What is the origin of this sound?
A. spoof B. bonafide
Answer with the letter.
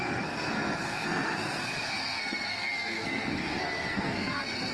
A